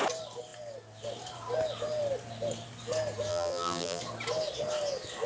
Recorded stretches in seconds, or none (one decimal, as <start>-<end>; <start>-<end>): 0.0-3.3; 4.0-5.3